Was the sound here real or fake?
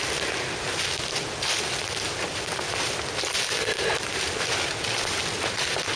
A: real